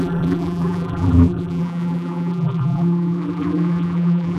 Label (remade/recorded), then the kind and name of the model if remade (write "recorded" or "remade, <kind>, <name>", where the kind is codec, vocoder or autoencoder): remade, vocoder, BigVGAN v2